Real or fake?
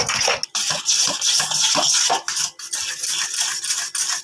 real